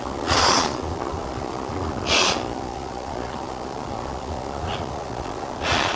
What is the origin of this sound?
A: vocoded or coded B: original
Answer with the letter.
A